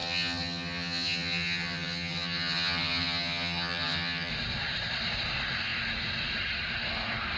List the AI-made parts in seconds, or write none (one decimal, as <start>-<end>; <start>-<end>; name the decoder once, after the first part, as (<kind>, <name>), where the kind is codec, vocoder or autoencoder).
0.0-4.3 (vocoder, HiFi-GAN)